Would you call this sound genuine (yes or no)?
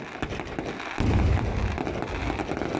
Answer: yes